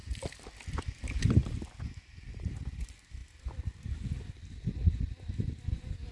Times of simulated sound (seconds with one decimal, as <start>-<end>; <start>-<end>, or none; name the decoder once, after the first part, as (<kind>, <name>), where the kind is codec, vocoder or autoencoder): none